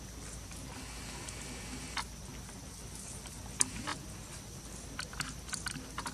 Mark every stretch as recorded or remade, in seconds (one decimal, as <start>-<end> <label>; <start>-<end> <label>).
0.0-6.1 recorded